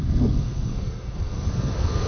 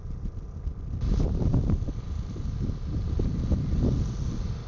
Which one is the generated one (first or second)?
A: first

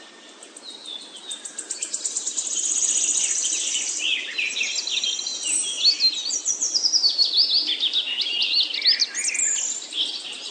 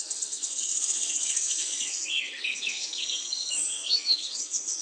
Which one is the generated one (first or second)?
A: second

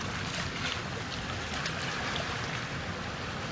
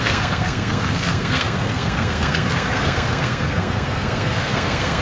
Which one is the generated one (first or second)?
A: second